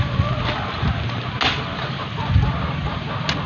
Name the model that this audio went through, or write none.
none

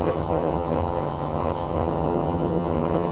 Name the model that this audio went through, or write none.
vocoder, HiFi-GAN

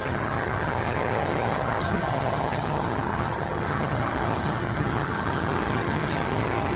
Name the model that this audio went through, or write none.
vocoder, HiFi-GAN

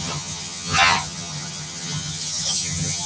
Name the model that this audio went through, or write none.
vocoder, HiFi-GAN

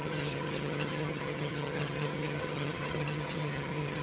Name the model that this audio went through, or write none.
vocoder, HiFi-GAN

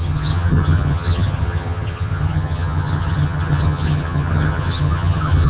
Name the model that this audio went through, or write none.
vocoder, HiFi-GAN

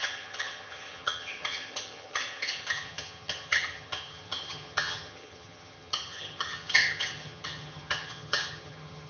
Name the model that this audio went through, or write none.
vocoder, HiFi-GAN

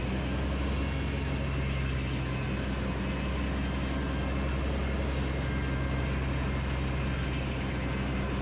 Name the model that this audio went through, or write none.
none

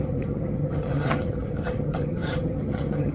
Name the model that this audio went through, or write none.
vocoder, HiFi-GAN